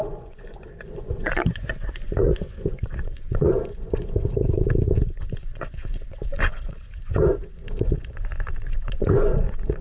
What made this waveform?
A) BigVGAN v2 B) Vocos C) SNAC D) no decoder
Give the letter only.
B